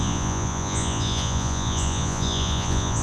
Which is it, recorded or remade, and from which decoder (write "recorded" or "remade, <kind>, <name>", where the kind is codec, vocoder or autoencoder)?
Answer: remade, vocoder, Vocos